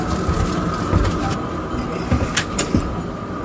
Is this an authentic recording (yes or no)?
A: yes